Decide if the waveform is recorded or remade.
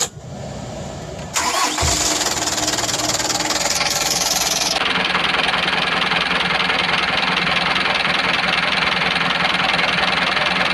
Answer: recorded